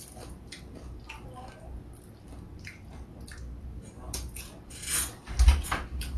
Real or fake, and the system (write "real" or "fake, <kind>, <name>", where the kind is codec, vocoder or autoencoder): real